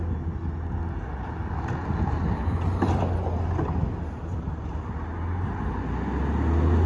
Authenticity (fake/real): real